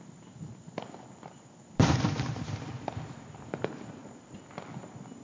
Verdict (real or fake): fake